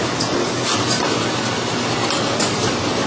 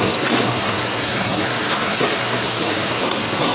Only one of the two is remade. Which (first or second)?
second